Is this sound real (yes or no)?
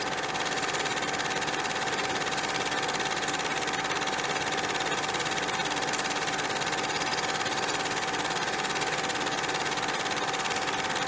yes